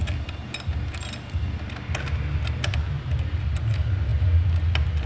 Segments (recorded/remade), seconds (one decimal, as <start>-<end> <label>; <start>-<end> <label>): 0.0-5.1 recorded